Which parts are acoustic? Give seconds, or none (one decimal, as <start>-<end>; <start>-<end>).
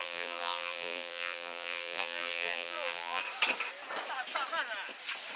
3.2-5.4